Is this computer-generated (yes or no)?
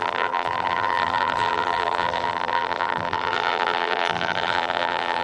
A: yes